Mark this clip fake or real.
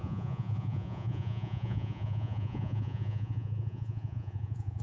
fake